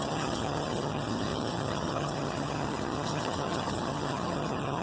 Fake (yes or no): yes